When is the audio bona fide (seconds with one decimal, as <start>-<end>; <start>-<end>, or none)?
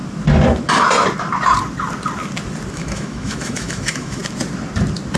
0.0-2.7; 4.2-5.2